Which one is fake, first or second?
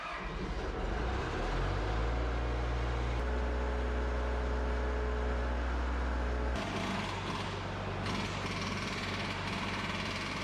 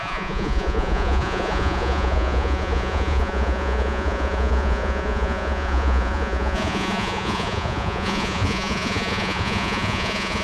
second